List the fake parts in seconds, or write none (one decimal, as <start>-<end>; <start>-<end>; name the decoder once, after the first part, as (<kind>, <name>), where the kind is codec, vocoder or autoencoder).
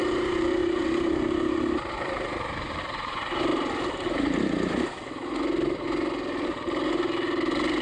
0.0-3.5 (vocoder, BigVGAN v2); 7.0-7.8